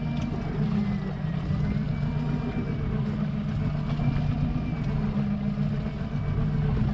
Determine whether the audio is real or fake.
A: real